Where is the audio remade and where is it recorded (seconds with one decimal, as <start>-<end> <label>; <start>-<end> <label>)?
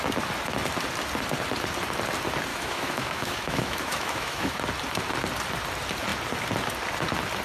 0.0-2.5 recorded; 2.5-4.6 remade; 4.6-7.4 recorded